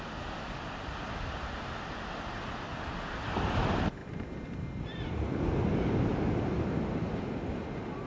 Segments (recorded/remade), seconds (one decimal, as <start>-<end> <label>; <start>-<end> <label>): 0.0-8.1 recorded